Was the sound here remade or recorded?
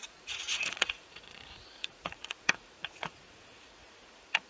remade